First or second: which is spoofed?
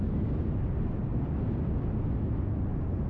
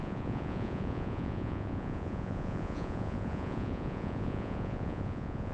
second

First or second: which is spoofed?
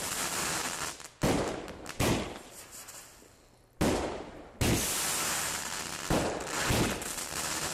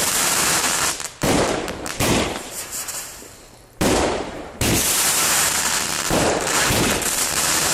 second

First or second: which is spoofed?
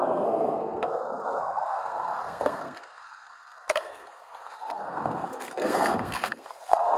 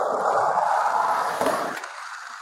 first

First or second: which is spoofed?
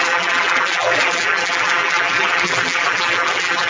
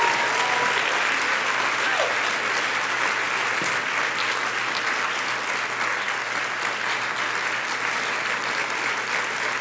first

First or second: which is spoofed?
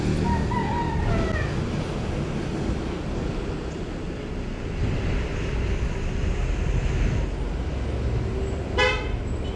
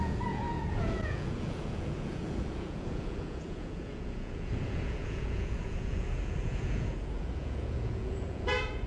second